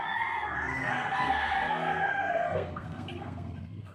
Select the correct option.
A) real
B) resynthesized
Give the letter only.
B